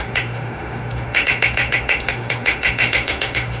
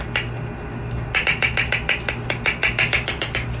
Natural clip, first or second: second